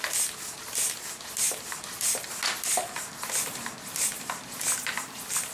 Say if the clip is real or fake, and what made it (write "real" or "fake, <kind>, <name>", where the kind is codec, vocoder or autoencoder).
real